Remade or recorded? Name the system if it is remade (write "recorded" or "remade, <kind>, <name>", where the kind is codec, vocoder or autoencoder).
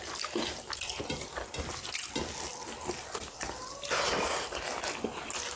recorded